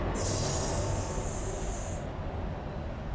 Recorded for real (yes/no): yes